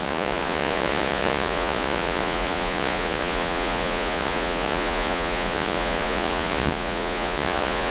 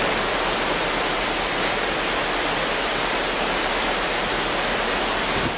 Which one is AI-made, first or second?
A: first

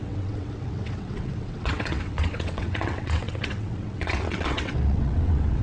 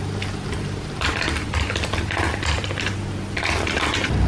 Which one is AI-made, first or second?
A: first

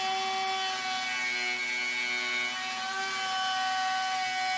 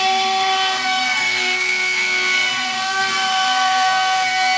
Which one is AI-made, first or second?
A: second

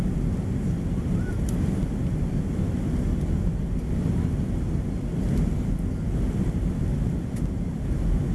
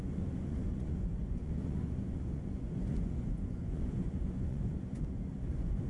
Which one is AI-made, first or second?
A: second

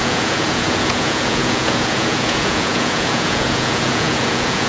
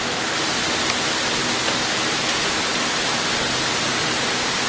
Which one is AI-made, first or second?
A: first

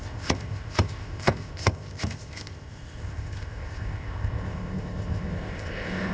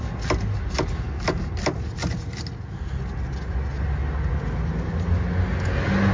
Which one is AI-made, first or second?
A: first